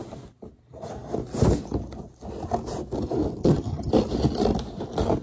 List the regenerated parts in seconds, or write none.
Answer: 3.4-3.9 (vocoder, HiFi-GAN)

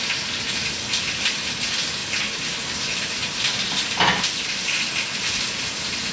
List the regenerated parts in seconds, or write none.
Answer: none

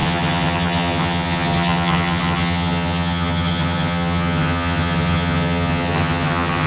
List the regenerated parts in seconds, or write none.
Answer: 0.0-6.7 (vocoder, HiFi-GAN)

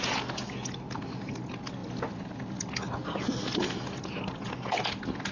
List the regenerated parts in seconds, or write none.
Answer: none